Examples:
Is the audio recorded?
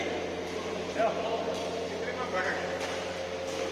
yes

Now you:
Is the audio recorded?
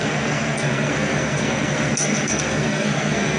no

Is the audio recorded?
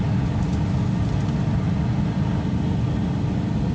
yes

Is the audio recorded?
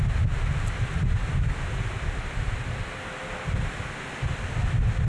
yes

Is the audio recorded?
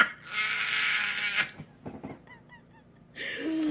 yes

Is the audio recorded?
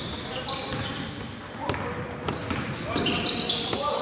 yes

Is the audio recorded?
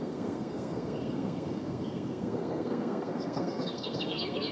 no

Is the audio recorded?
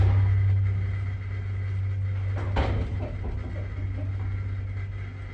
yes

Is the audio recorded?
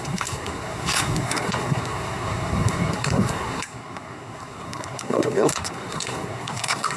no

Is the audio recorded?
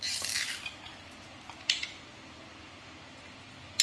yes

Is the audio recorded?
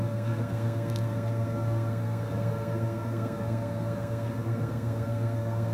no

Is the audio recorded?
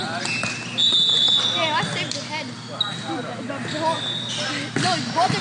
yes